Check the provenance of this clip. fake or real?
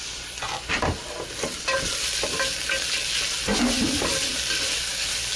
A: real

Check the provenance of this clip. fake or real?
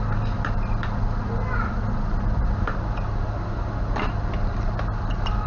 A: real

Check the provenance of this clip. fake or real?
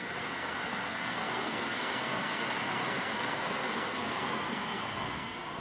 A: fake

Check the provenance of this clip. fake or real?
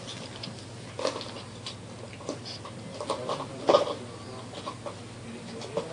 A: real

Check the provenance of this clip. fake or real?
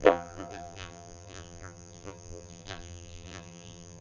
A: fake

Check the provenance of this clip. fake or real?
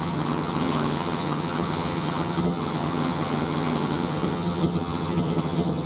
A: fake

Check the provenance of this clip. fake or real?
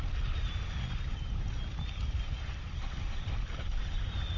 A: real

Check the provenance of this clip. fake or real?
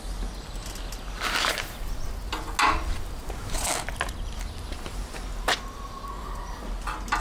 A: real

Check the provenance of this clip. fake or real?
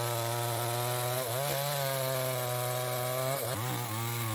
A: real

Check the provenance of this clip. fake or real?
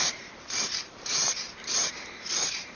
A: fake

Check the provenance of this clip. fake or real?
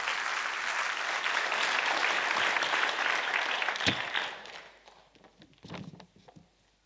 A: real